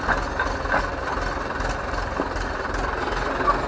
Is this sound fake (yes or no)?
no